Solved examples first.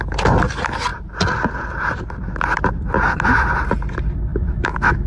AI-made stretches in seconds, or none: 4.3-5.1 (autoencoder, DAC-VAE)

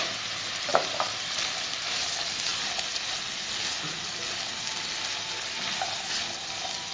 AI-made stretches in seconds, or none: 0.7-2.1 (vocoder, BigVGAN v2)

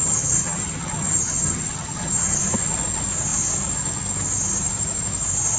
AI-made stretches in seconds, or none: 0.0-2.4 (vocoder, HiFi-GAN)